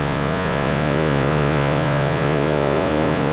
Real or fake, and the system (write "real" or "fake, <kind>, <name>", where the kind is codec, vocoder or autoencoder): fake, vocoder, Vocos